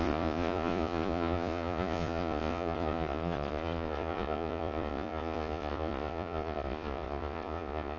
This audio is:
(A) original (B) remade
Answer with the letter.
B